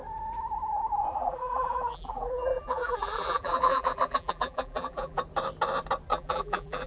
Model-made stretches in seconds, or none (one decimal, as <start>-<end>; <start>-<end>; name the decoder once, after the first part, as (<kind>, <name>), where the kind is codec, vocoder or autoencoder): 1.1-5.2 (vocoder, BigVGAN v2); 6.1-6.9